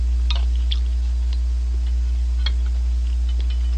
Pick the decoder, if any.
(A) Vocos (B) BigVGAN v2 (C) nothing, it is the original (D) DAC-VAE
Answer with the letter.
C